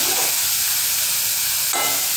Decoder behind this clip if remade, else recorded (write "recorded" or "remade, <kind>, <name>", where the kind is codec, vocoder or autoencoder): recorded